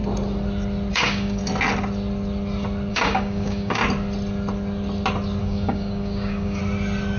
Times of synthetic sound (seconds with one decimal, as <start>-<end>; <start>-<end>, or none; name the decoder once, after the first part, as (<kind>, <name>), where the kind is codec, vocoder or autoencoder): 0.9-1.4 (codec, DAC); 2.9-3.8; 5.4-6.6